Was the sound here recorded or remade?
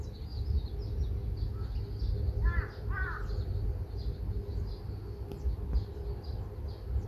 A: recorded